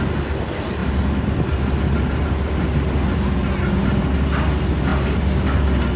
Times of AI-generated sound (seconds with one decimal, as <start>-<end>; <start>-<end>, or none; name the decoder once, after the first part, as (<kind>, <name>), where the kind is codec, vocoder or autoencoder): none

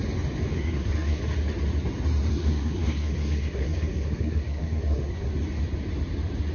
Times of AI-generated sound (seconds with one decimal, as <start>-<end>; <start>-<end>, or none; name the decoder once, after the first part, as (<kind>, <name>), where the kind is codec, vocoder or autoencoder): 0.5-1.2 (codec, SNAC); 2.3-5.3

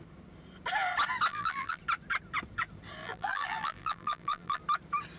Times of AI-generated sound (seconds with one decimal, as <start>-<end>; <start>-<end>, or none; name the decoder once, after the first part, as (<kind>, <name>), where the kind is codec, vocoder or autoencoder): 1.3-1.8 (vocoder, BigVGAN v2); 3.0-4.6

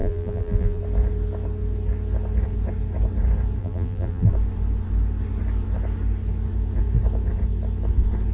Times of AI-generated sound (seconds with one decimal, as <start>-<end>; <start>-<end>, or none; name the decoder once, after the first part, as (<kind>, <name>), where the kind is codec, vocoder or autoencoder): 0.0-0.8 (vocoder, BigVGAN v2); 3.6-4.3

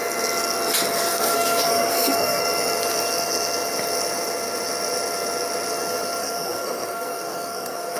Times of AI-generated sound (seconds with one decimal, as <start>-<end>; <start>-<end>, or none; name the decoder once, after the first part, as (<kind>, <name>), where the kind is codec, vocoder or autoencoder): 1.1-2.4 (codec, SNAC); 6.2-8.0